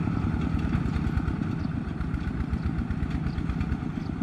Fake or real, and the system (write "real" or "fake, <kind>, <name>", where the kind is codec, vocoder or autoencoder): real